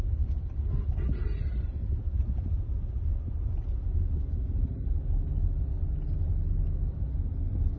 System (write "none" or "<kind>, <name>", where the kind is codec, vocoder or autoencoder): none